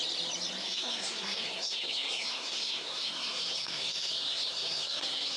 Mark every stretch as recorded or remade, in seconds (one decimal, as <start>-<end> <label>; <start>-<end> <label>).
0.0-0.6 recorded; 0.6-5.4 remade